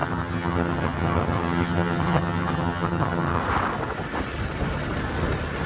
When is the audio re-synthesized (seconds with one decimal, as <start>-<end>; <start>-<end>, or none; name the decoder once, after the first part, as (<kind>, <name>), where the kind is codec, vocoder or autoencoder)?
0.0-3.4 (vocoder, HiFi-GAN)